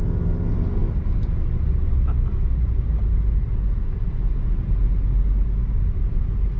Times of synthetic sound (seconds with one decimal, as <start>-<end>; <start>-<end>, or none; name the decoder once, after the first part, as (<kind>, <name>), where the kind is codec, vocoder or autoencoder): none